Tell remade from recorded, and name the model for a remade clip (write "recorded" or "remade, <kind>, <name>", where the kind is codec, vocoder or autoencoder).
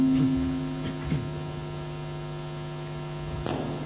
recorded